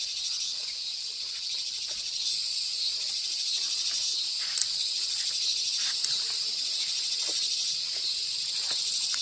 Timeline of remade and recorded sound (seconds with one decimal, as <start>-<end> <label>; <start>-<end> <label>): 0.0-9.2 recorded